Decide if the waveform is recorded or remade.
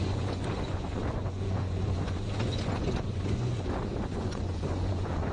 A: remade